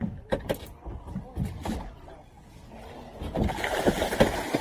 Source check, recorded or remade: recorded